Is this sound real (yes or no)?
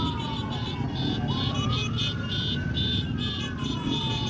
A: yes